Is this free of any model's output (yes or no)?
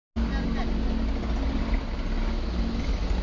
yes